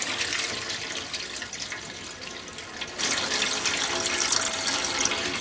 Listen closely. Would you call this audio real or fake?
real